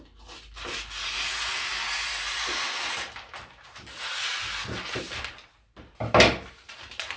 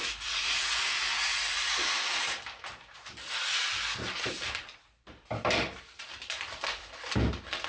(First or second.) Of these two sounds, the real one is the first